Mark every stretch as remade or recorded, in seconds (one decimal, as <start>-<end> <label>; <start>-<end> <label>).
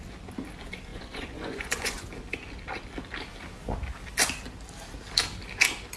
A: 0.0-0.9 recorded; 0.9-2.1 remade; 2.1-6.0 recorded